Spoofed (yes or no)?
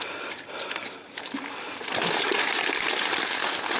no